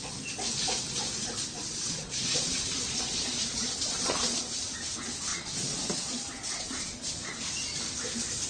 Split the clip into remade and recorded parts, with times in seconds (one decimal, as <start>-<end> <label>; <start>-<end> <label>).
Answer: 0.0-2.0 recorded; 2.0-4.4 remade; 4.4-5.3 recorded; 5.3-7.0 remade; 7.0-8.5 recorded